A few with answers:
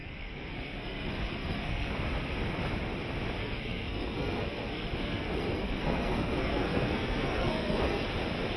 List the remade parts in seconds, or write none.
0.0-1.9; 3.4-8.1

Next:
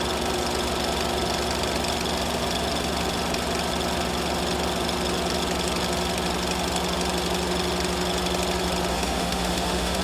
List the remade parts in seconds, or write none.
8.9-10.0

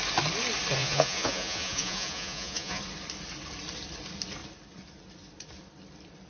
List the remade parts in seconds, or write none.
0.8-2.8

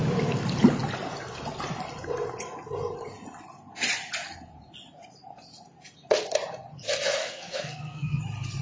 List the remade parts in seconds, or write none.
7.2-8.2

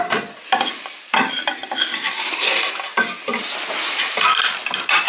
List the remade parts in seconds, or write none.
none